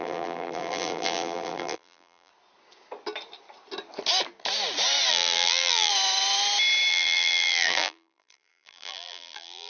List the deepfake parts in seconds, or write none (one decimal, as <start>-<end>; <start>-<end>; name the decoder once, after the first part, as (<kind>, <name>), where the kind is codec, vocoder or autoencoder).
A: 0.0-2.3 (vocoder, BigVGAN v2); 5.1-5.9; 6.9-9.7